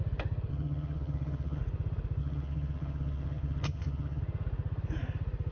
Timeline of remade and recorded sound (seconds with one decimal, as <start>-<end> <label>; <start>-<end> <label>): 0.0-0.5 recorded; 0.5-1.6 remade; 1.6-2.2 recorded; 2.2-4.2 remade; 4.2-5.5 recorded